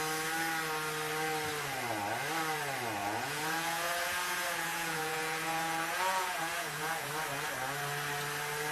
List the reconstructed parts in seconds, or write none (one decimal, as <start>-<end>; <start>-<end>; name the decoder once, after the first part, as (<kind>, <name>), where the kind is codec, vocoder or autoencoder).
3.0-7.1 (vocoder, Vocos)